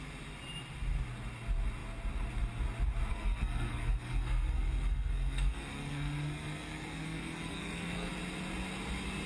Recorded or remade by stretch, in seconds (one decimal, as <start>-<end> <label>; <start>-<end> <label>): 0.0-3.1 recorded; 3.1-8.1 remade; 8.1-9.3 recorded